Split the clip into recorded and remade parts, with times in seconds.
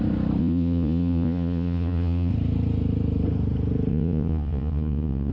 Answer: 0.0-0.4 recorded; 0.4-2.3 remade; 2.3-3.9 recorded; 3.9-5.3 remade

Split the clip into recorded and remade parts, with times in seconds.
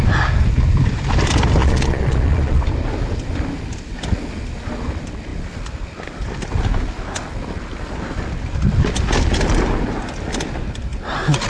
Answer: 0.0-1.6 recorded; 1.6-2.6 remade; 2.6-11.5 recorded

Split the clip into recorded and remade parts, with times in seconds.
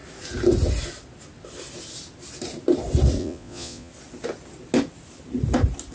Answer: 0.0-3.2 recorded; 3.2-3.9 remade; 3.9-5.9 recorded